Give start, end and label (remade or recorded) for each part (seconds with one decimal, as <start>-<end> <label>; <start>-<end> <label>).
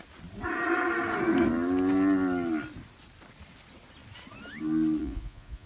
0.0-5.0 recorded; 5.0-5.7 remade